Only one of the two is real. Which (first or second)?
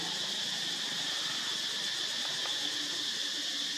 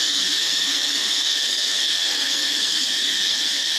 first